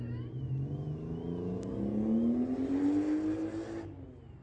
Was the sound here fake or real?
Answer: real